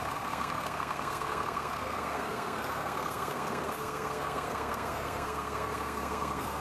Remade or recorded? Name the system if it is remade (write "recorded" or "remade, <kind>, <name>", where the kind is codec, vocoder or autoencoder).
remade, codec, SNAC